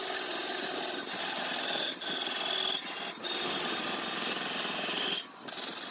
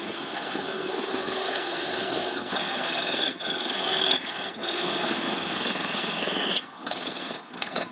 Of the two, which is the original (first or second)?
first